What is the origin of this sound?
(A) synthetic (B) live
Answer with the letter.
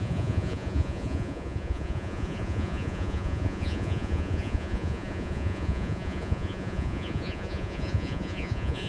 A